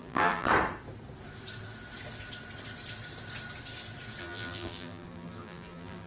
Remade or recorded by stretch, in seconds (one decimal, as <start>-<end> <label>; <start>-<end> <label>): 0.0-0.5 remade; 0.5-4.2 recorded; 4.2-6.1 remade